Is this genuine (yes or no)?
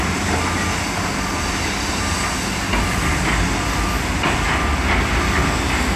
yes